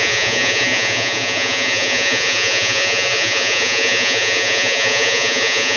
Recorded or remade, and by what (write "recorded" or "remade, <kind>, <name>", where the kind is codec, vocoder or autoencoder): remade, vocoder, Vocos